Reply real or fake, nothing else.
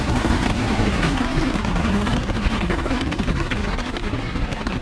fake